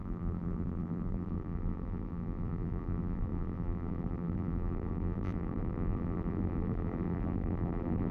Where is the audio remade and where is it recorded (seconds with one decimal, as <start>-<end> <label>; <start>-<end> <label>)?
0.0-8.1 remade